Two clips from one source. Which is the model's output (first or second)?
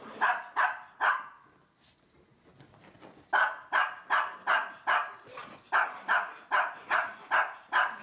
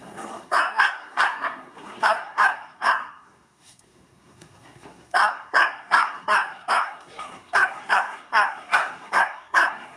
second